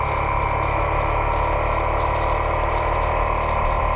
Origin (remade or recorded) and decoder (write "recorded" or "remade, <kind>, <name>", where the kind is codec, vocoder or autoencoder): recorded